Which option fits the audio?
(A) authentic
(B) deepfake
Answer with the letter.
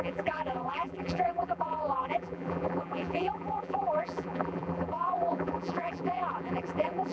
B